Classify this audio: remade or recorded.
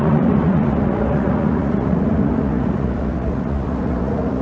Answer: remade